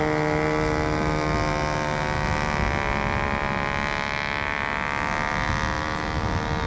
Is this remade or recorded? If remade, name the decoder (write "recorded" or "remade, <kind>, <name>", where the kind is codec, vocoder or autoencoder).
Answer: recorded